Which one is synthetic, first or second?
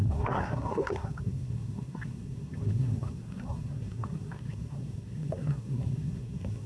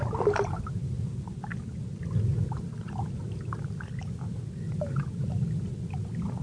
first